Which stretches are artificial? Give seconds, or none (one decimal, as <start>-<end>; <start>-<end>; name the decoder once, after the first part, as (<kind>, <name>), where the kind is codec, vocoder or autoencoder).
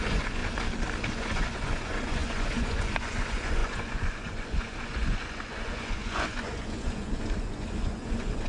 0.0-0.4 (vocoder, Vocos); 1.0-8.5